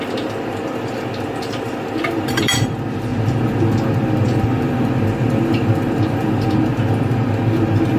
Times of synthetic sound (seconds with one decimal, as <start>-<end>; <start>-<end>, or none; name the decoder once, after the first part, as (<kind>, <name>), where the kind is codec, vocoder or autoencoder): 0.0-8.0 (vocoder, BigVGAN v2)